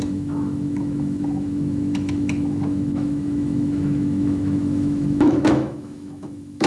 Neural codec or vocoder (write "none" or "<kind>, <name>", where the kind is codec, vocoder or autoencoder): autoencoder, DAC-VAE